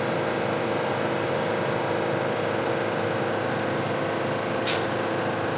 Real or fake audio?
real